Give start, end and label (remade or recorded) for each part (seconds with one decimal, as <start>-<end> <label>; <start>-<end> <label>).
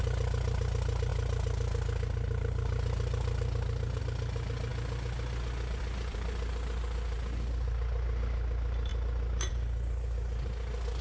0.0-8.9 recorded; 8.9-9.5 remade; 9.5-11.0 recorded